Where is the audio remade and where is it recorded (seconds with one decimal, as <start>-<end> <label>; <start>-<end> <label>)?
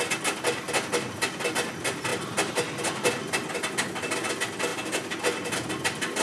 0.0-6.2 recorded